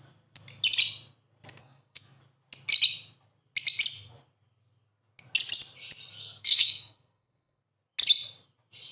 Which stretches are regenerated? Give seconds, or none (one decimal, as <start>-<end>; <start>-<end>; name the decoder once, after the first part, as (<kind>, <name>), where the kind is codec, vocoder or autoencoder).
1.6-2.2 (codec, SNAC); 6.2-7.6